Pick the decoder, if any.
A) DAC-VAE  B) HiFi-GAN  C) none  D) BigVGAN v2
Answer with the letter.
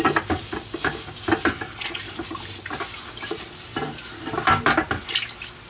C